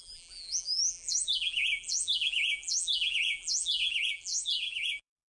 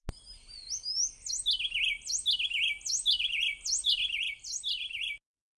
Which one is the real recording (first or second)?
second